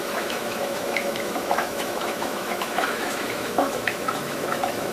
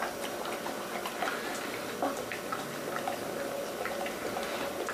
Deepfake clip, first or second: first